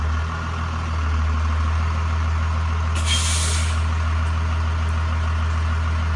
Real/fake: real